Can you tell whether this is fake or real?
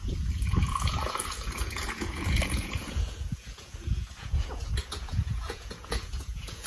fake